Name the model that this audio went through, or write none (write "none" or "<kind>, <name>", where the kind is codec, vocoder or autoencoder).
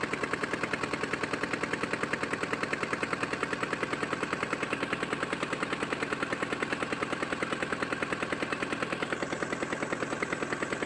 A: none